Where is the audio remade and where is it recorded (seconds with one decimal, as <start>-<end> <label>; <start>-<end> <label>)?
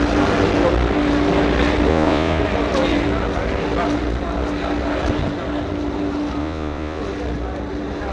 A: 0.0-1.9 recorded; 1.9-2.4 remade; 2.4-6.4 recorded; 6.4-7.0 remade; 7.0-8.1 recorded